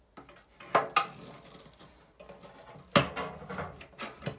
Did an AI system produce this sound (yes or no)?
no